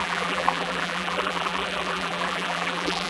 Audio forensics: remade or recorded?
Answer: remade